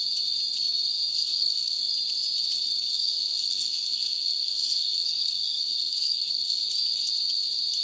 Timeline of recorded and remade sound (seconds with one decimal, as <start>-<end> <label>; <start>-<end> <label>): 0.0-1.1 recorded; 1.1-1.8 remade; 1.8-2.9 recorded; 2.9-6.6 remade; 6.6-7.8 recorded